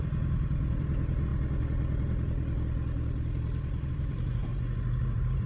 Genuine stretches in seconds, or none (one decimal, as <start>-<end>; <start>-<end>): 1.3-3.9; 4.5-5.1